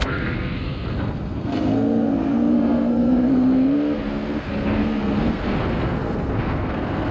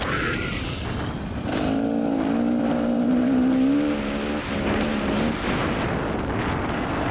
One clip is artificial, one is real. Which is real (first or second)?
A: second